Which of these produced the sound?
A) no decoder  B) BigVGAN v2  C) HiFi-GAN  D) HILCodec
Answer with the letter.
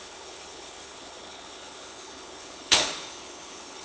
D